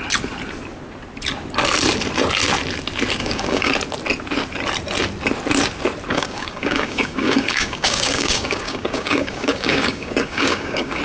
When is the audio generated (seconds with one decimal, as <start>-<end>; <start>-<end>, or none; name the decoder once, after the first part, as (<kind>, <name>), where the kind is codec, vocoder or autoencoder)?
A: 3.2-3.7 (codec, DAC); 6.1-11.0